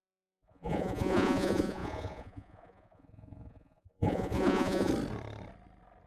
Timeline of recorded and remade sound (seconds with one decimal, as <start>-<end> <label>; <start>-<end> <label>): 0.0-4.9 remade; 4.9-6.1 recorded